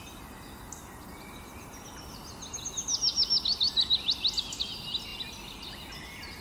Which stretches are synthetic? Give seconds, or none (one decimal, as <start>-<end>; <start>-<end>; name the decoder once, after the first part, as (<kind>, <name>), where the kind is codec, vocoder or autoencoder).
none